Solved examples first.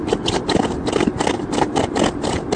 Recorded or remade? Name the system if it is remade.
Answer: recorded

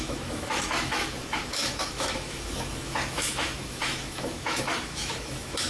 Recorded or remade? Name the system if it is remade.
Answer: remade, autoencoder, DAC-VAE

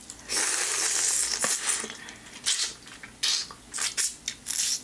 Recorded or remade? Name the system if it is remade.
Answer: recorded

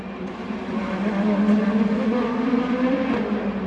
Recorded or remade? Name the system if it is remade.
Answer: remade, vocoder, BigVGAN v2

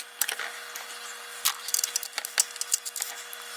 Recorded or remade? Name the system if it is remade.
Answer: recorded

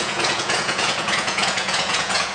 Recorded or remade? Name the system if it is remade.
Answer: remade, vocoder, Vocos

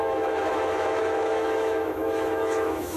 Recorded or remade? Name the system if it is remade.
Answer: remade, autoencoder, DAC-VAE